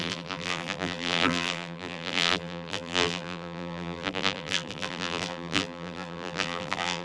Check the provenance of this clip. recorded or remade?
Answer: remade